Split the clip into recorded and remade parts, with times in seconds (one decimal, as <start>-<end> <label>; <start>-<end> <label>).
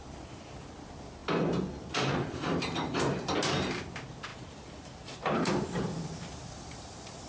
0.0-1.2 remade; 1.2-1.8 recorded; 1.8-7.3 remade